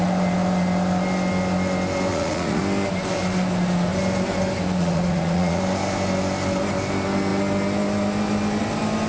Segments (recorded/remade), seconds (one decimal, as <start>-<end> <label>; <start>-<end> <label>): 0.0-2.1 recorded; 2.1-2.6 remade; 2.6-4.8 recorded; 4.8-5.6 remade; 5.6-9.1 recorded